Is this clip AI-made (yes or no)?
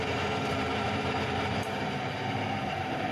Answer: yes